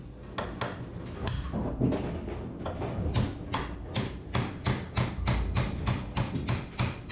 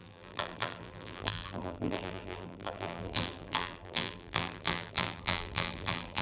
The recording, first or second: first